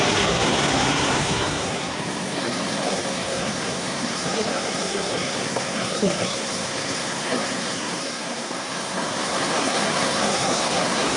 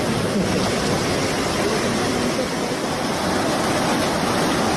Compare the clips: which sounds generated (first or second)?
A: first